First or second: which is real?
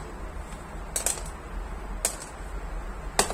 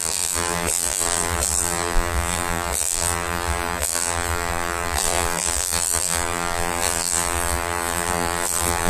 first